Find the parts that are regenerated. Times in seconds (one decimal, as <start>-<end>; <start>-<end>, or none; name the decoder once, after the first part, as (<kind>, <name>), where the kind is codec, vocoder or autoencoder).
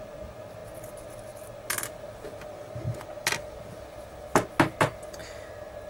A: none